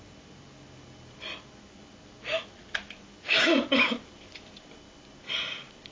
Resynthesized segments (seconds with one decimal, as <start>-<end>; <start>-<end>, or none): none